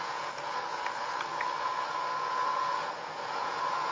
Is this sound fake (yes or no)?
yes